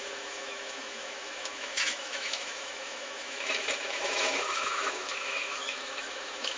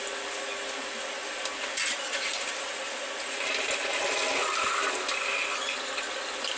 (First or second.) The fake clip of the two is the first